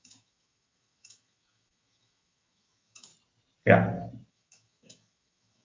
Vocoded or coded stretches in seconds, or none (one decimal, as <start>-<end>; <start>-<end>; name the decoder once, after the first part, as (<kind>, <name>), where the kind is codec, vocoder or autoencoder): 0.0-3.1 (autoencoder, DAC-VAE); 4.3-5.6

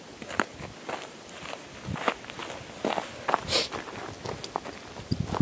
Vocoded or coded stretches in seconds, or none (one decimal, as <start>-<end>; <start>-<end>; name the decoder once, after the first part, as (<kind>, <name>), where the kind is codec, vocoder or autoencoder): none